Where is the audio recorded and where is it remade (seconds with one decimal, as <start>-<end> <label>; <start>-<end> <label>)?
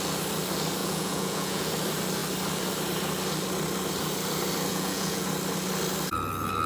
0.0-0.8 recorded; 0.8-1.7 remade; 1.7-4.7 recorded; 4.7-5.3 remade; 5.3-6.7 recorded